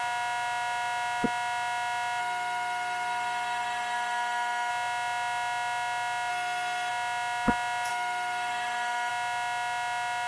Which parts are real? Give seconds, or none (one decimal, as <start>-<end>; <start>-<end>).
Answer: 0.0-2.2; 4.7-6.3; 6.9-7.9; 9.1-10.3